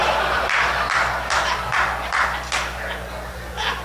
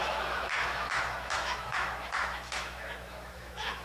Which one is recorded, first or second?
first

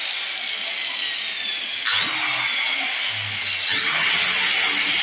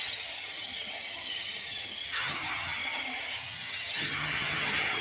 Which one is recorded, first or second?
first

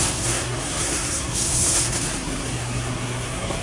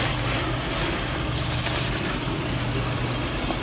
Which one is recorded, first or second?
second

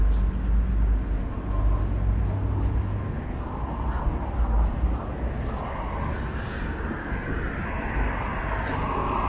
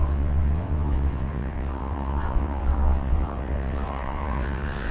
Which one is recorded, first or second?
first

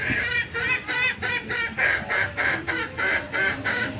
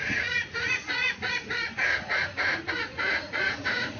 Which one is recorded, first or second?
first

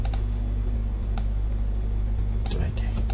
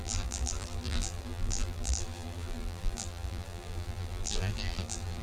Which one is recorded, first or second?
first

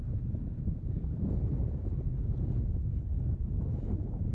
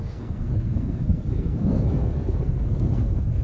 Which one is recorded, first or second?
first